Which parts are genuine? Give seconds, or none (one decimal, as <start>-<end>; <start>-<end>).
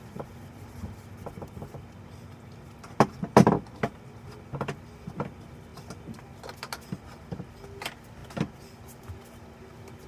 0.0-10.1